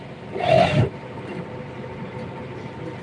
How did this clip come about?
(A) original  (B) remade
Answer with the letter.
A